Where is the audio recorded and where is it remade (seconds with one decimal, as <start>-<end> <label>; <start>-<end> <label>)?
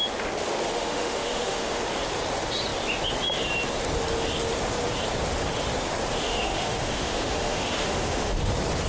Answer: 0.0-0.7 recorded; 0.7-1.8 remade; 1.8-6.2 recorded; 6.2-8.4 remade; 8.4-8.9 recorded